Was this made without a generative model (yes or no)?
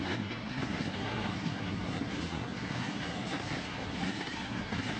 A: no